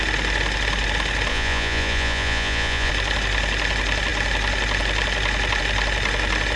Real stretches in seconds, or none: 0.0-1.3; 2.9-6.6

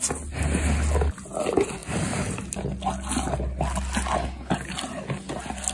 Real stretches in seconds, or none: 0.0-5.7